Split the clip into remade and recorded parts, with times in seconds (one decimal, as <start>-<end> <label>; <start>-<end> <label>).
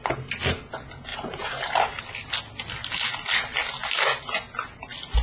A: 0.0-1.1 recorded; 1.1-2.0 remade; 2.0-5.2 recorded